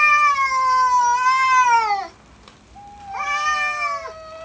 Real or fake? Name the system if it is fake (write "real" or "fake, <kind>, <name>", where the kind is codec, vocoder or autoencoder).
real